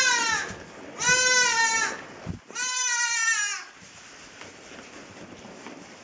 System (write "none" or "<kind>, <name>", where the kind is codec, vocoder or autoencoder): none